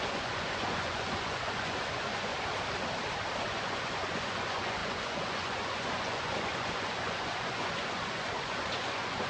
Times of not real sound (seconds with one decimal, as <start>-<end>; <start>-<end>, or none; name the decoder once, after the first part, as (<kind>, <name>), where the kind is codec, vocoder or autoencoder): 0.0-2.3 (vocoder, Vocos); 3.4-9.3